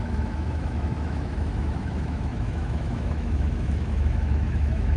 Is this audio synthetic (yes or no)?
yes